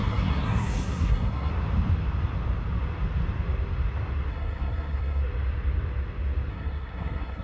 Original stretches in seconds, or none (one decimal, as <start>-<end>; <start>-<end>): 1.5-4.3; 5.2-6.5

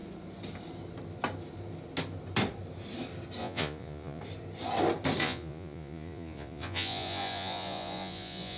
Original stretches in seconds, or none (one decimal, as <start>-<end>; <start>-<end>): 0.0-3.4; 4.2-5.2

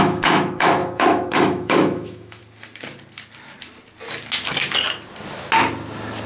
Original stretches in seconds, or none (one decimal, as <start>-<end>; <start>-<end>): 2.4-6.3